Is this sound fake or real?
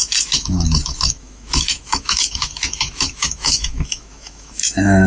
fake